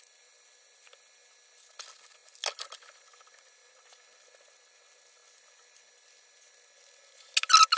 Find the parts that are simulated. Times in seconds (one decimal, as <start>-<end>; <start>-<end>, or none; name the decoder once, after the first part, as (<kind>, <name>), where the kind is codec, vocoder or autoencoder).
none